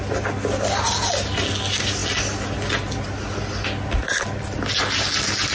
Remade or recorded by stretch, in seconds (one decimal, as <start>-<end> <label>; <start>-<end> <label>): 0.0-5.5 recorded